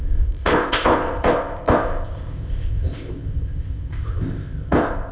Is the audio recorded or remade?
remade